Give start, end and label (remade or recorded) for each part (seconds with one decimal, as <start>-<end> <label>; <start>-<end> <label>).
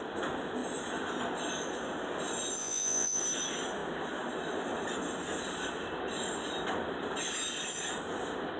0.0-2.6 recorded; 2.6-3.2 remade; 3.2-8.6 recorded